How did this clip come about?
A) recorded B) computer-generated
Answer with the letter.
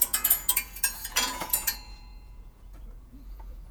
B